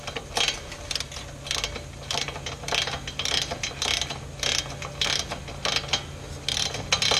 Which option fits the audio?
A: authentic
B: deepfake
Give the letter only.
A